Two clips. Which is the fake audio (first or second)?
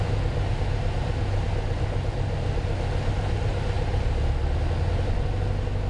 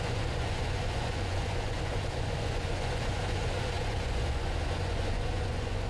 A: second